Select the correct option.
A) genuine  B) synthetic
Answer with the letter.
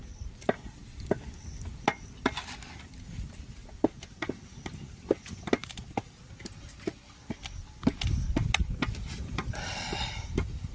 A